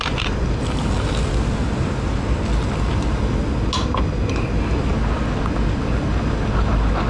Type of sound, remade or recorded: recorded